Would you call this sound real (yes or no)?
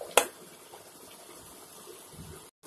yes